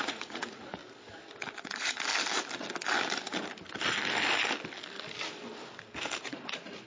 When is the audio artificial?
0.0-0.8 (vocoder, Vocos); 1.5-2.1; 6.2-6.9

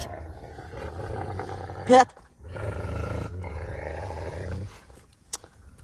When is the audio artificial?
0.0-5.8 (vocoder, Vocos)

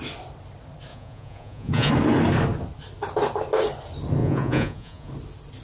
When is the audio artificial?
0.9-1.9 (vocoder, Vocos); 4.2-5.1

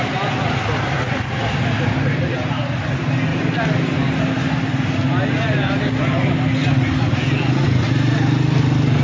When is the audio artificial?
none

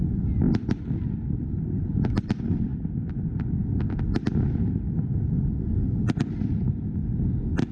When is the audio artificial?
none

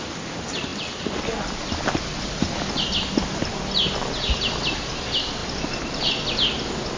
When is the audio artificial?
none

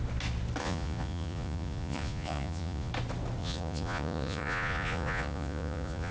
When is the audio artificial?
0.6-2.9 (vocoder, Vocos); 3.4-6.1